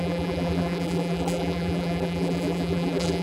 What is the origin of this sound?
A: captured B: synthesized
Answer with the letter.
B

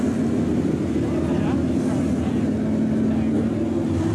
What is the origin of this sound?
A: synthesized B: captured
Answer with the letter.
B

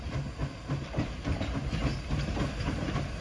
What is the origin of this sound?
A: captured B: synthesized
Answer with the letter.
A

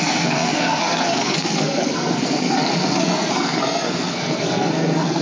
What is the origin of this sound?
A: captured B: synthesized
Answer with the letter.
B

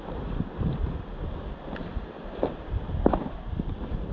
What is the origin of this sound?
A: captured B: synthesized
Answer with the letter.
A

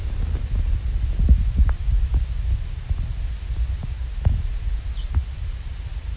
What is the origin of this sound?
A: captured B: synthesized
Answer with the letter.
A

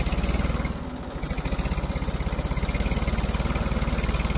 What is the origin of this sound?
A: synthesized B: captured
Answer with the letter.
B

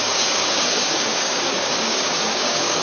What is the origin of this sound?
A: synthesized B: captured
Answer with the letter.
A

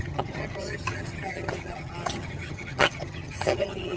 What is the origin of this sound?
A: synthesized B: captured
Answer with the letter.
A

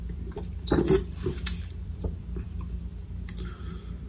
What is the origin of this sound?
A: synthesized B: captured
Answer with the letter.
A